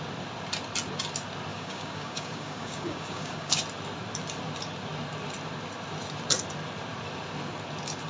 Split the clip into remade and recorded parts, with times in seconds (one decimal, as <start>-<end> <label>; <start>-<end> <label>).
0.0-1.5 recorded; 1.5-3.6 remade; 3.6-8.1 recorded